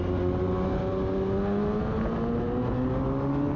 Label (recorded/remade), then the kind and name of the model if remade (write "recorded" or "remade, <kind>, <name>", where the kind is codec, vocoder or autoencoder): recorded